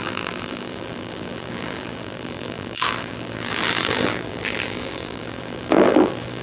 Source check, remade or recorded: remade